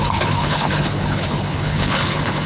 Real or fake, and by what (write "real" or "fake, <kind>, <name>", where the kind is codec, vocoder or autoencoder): fake, codec, HILCodec